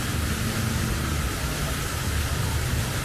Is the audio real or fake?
real